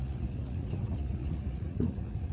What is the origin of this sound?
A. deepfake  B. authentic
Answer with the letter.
A